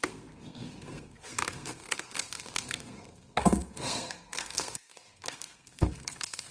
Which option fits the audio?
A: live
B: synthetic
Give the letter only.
B